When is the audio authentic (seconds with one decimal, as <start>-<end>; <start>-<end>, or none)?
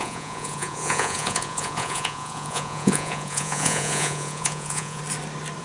5.0-5.6